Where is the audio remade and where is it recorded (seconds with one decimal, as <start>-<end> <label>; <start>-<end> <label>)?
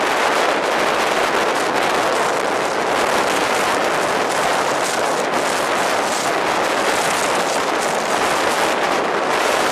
0.0-9.7 recorded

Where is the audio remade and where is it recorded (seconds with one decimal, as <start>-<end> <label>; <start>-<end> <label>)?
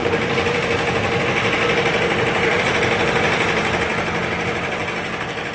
0.0-2.6 remade; 2.6-5.5 recorded